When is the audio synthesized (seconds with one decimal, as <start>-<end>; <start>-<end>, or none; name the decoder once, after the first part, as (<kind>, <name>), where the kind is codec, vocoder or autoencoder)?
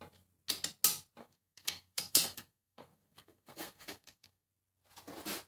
1.2-4.5 (codec, SNAC)